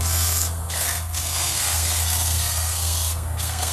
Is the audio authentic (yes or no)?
no